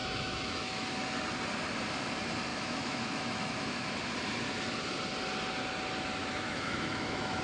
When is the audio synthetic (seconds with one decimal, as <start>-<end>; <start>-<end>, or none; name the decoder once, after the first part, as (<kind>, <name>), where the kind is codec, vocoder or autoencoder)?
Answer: 0.0-0.9 (autoencoder, DAC-VAE); 2.5-3.9; 6.2-7.4